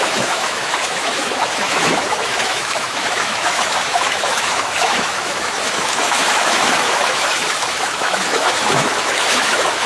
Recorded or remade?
remade